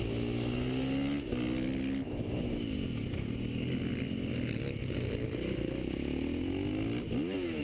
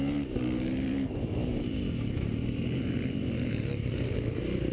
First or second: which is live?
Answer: first